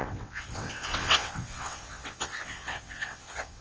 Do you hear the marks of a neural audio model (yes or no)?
yes